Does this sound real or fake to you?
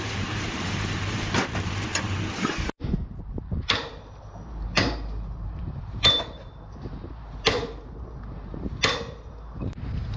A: fake